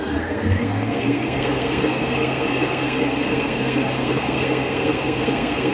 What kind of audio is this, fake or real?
fake